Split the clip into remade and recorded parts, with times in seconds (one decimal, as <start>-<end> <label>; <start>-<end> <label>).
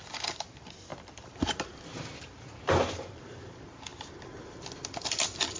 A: 0.0-0.9 recorded; 0.9-3.4 remade; 3.4-5.6 recorded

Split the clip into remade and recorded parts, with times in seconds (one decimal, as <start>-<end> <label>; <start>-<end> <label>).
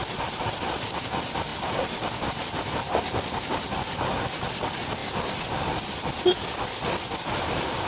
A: 0.0-1.5 recorded; 1.5-2.7 remade; 2.7-5.0 recorded; 5.0-7.5 remade; 7.5-7.9 recorded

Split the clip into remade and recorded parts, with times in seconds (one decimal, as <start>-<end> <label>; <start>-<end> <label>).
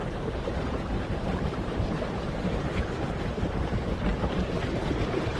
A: 0.0-3.2 remade; 3.2-4.1 recorded; 4.1-4.6 remade; 4.6-5.4 recorded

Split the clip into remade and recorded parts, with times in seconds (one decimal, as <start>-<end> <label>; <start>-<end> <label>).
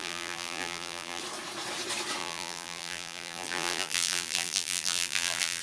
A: 0.0-1.2 remade; 1.2-2.2 recorded; 2.2-5.6 remade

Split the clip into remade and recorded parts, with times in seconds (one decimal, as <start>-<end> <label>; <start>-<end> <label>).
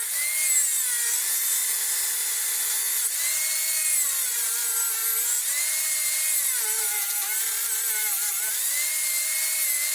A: 0.0-1.6 recorded; 1.6-2.7 remade; 2.7-9.9 recorded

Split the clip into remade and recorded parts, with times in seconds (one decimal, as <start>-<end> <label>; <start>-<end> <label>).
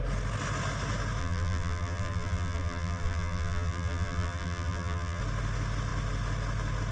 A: 0.0-1.2 recorded; 1.2-5.2 remade; 5.2-6.9 recorded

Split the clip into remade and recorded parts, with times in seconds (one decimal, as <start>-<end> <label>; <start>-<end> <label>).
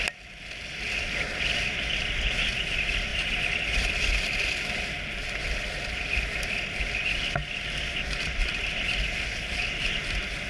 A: 0.0-3.1 recorded; 3.1-4.1 remade; 4.1-10.5 recorded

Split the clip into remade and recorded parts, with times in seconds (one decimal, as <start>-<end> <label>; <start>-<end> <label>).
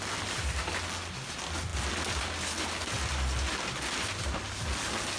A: 0.0-5.2 recorded